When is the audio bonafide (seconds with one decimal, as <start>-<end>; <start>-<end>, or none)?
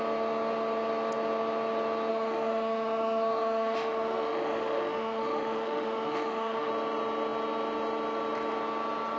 0.0-2.1; 6.7-9.2